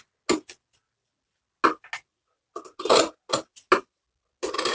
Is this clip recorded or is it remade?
recorded